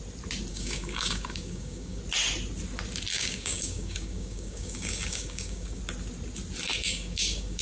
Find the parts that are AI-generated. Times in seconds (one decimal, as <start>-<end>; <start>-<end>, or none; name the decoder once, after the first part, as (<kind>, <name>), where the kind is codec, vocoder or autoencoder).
0.5-2.0 (codec, DAC); 3.1-5.8; 6.7-7.6